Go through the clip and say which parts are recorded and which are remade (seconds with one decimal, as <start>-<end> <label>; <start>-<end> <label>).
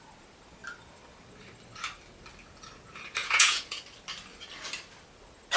0.0-3.2 recorded; 3.2-3.8 remade; 3.8-5.6 recorded